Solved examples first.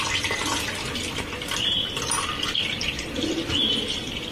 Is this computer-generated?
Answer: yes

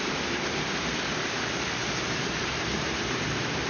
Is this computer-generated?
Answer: yes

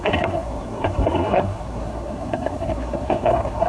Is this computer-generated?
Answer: yes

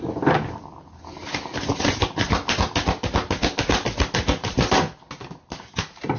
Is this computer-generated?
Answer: no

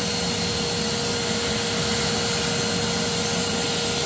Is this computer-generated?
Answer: no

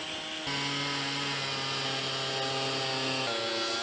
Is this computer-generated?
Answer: no